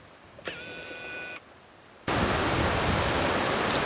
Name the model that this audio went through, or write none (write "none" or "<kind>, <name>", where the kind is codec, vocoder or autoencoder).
none